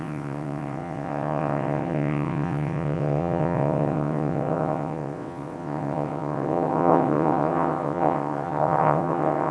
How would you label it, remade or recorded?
remade